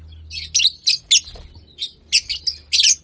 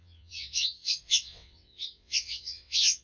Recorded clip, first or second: first